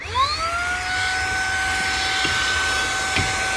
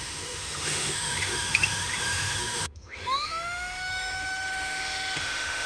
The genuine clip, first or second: first